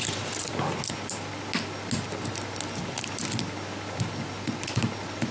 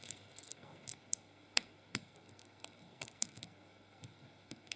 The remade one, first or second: second